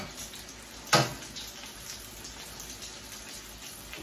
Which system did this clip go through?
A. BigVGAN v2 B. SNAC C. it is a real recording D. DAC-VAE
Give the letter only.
C